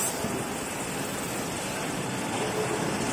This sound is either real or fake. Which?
real